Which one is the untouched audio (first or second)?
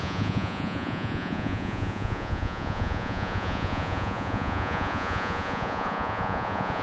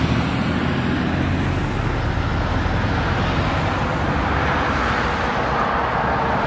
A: second